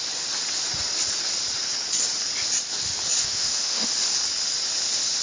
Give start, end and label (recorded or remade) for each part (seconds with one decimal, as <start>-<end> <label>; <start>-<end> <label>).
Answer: 0.0-3.2 recorded; 3.2-3.9 remade; 3.9-5.2 recorded